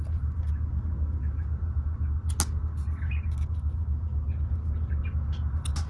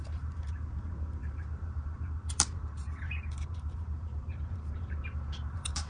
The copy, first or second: second